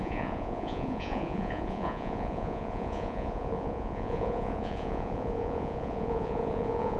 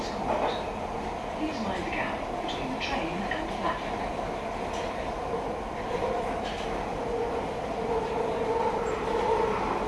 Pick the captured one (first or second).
second